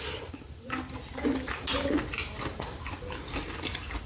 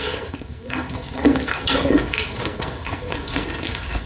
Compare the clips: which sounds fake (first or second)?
second